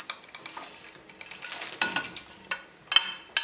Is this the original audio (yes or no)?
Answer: yes